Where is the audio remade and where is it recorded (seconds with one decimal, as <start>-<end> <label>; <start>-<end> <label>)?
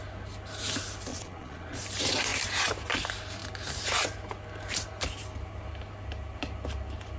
0.0-1.1 recorded; 1.1-1.8 remade; 1.8-7.2 recorded